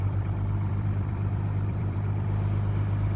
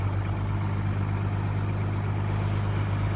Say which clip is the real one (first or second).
second